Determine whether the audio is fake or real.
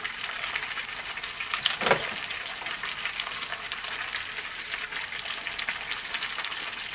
real